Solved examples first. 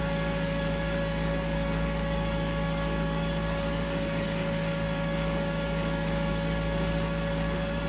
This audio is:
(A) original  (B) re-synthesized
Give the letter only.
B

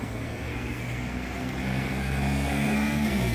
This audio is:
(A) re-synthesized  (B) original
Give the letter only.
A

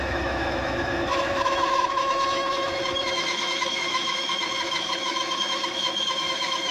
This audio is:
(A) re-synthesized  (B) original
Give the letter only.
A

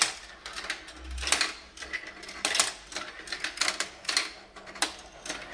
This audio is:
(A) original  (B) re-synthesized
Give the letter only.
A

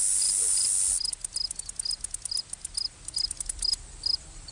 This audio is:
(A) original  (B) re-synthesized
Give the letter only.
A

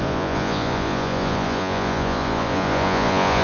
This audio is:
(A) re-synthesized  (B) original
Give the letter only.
A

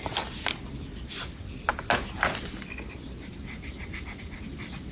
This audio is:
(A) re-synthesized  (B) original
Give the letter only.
B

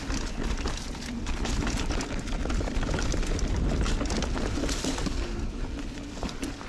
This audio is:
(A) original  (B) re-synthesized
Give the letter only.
A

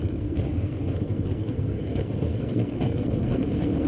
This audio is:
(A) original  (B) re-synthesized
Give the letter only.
B